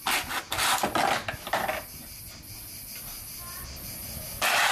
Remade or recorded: recorded